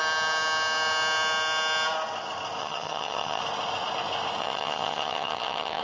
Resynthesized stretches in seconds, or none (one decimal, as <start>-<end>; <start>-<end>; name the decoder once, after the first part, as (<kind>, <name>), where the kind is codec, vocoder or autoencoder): 2.6-3.4 (vocoder, HiFi-GAN); 4.4-5.8